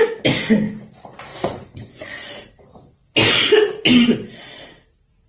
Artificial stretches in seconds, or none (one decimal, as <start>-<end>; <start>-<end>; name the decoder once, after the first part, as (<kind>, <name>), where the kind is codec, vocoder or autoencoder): 1.3-2.3 (vocoder, Vocos)

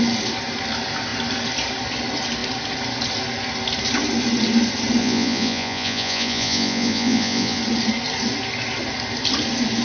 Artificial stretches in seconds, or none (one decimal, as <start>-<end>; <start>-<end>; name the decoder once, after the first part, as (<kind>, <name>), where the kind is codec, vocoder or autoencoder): 5.0-7.6 (vocoder, Vocos)